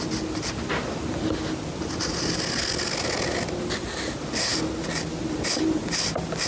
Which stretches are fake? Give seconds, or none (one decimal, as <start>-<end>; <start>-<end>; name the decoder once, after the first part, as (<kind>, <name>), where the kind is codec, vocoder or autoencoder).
none